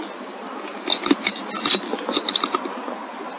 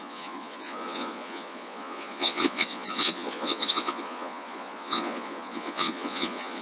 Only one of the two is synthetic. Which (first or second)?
second